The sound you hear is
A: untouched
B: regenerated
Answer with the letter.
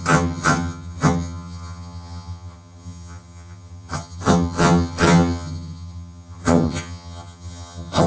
B